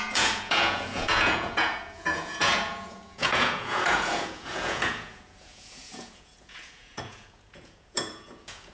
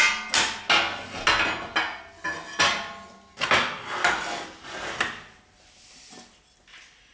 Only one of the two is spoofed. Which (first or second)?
first